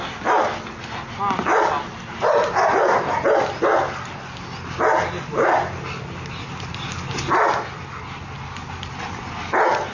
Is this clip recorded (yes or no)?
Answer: yes